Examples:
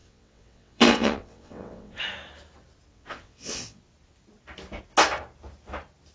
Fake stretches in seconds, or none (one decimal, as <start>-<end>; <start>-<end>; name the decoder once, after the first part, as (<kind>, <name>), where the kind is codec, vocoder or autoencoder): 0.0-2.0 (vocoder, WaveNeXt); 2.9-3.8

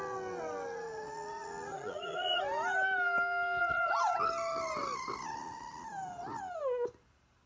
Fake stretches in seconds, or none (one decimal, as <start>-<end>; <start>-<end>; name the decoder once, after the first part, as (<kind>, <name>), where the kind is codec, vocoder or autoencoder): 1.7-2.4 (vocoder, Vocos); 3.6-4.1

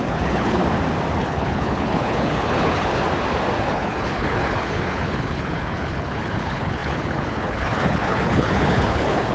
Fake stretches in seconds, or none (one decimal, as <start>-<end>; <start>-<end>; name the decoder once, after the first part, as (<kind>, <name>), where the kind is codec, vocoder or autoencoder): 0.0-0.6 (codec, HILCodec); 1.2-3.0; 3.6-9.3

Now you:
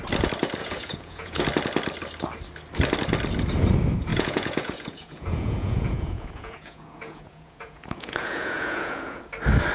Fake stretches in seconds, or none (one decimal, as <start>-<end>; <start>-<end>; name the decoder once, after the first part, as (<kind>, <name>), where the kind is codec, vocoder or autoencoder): 0.6-1.4 (vocoder, Vocos); 4.1-9.2